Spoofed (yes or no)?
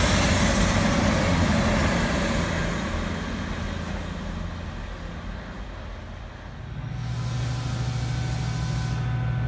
no